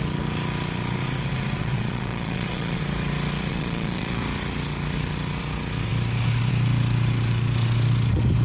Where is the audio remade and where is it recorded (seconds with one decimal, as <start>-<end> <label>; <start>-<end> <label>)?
0.0-1.6 recorded; 1.6-2.8 remade; 2.8-3.5 recorded; 3.5-4.2 remade; 4.2-8.4 recorded

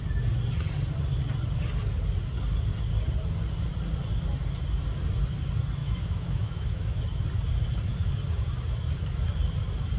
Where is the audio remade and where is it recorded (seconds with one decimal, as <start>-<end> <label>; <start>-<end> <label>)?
0.0-5.8 recorded; 5.8-7.0 remade; 7.0-10.0 recorded

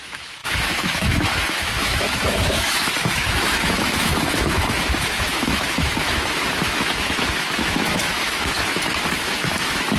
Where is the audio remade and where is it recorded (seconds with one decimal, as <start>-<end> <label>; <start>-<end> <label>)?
0.0-10.0 remade

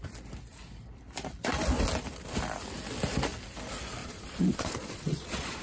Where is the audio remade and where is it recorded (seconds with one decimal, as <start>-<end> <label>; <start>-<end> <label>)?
0.0-4.0 recorded; 4.0-5.6 remade

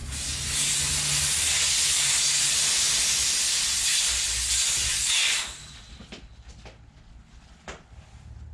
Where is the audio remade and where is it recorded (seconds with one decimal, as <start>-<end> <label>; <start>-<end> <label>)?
0.0-8.5 recorded

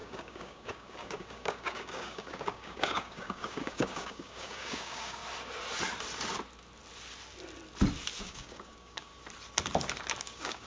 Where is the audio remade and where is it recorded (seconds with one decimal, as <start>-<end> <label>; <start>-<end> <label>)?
0.0-5.2 remade; 5.2-8.2 recorded; 8.2-9.1 remade; 9.1-10.2 recorded; 10.2-10.7 remade

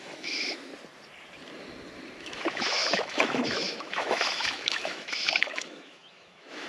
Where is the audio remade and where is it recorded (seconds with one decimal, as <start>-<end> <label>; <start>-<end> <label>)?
0.0-0.7 remade; 0.7-2.2 recorded; 2.2-6.7 remade

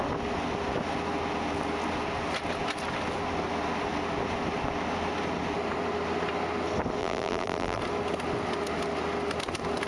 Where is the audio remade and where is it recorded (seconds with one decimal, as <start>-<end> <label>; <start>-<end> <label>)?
0.0-7.0 recorded; 7.0-7.8 remade; 7.8-9.9 recorded